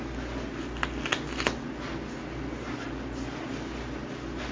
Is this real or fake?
real